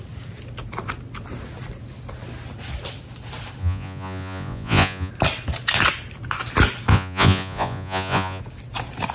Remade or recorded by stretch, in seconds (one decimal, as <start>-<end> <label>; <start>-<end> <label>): 0.0-3.6 recorded; 3.6-5.1 remade; 5.1-6.9 recorded; 6.9-8.4 remade; 8.4-9.1 recorded